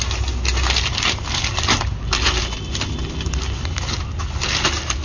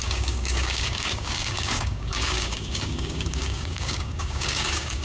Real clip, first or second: first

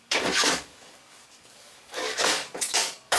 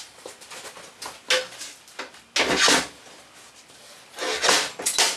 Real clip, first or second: second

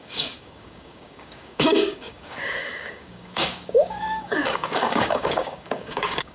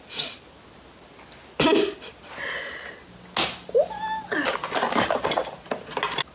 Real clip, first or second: second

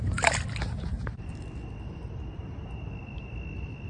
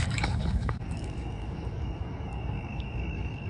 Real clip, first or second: first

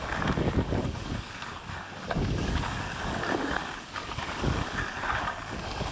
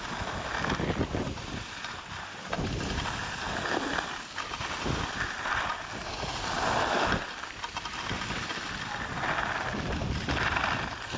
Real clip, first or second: second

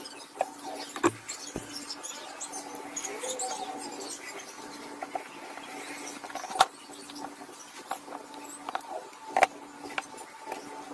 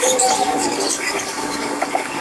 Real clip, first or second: first